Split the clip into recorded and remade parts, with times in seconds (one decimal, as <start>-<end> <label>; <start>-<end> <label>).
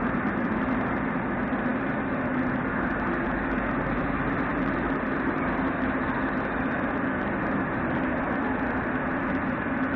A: 0.0-4.5 recorded; 4.5-5.4 remade; 5.4-10.0 recorded